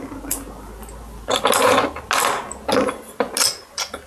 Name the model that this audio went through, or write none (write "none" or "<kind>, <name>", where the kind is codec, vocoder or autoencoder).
none